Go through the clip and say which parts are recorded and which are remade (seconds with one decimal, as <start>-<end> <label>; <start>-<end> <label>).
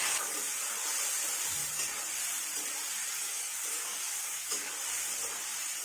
0.0-3.0 recorded; 3.0-4.7 remade; 4.7-5.8 recorded